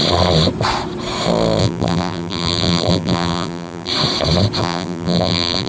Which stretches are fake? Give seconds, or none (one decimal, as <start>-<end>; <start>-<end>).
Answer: 1.6-3.9; 4.6-5.7